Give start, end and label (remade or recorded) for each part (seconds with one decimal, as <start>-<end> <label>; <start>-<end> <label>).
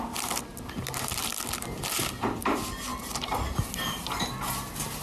0.0-5.0 recorded